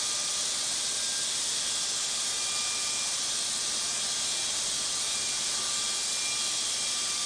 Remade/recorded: recorded